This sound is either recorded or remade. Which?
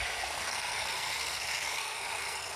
remade